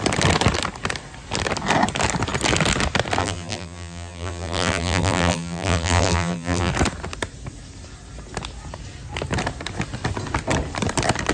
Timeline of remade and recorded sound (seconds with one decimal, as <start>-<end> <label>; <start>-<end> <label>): 0.0-3.2 recorded; 3.2-6.7 remade; 6.7-11.3 recorded